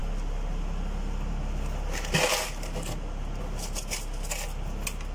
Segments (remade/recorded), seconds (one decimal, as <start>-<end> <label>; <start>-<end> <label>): 0.0-5.1 recorded